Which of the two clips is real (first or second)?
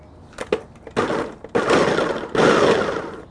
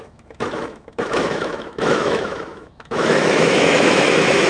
first